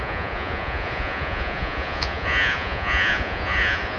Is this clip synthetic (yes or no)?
yes